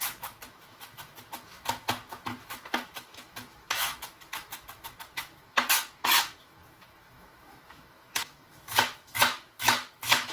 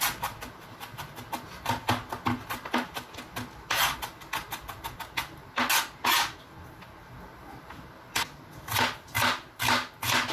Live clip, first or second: second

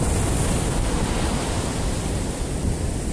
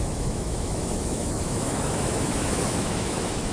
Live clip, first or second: first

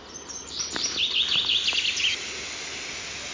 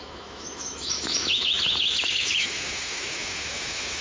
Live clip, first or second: first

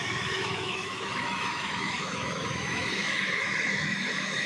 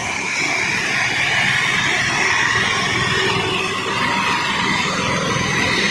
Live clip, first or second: second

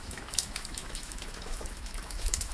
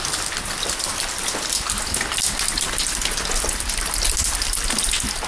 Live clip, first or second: second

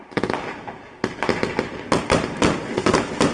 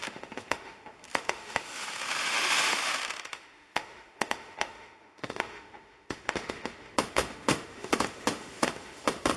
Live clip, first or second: first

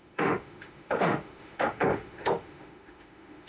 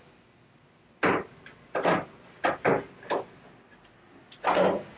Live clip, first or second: second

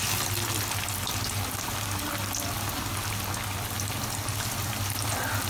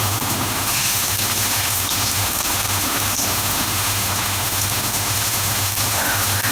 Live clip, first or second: first